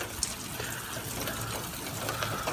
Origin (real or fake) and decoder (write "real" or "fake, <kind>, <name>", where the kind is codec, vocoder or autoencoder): real